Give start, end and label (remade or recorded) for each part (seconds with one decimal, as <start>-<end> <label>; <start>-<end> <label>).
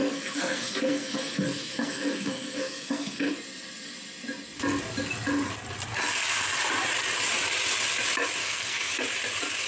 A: 0.0-3.3 remade; 3.3-8.4 recorded; 8.4-8.9 remade; 8.9-9.7 recorded